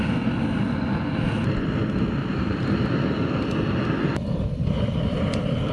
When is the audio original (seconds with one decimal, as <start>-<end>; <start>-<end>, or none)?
0.0-2.2